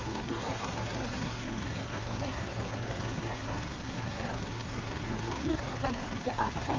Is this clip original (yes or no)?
no